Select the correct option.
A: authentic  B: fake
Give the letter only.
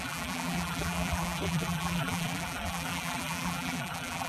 B